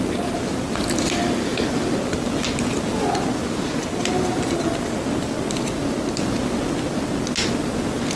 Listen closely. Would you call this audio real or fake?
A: real